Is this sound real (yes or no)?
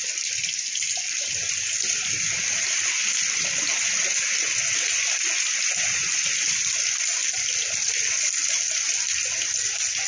yes